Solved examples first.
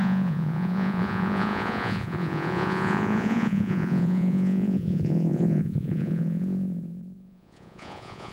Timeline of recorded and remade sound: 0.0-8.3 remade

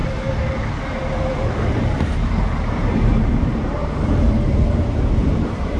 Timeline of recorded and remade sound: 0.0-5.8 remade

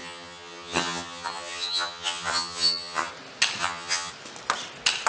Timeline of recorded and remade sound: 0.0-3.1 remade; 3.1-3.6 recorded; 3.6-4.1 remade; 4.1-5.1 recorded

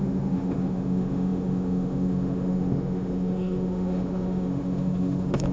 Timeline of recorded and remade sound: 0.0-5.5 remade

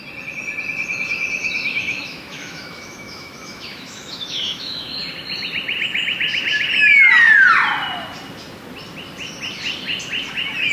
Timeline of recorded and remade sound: 0.0-1.4 recorded; 1.4-5.0 remade; 5.0-10.7 recorded

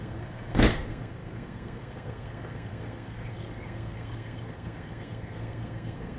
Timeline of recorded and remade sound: 0.0-6.2 remade